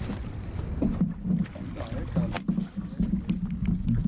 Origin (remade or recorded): recorded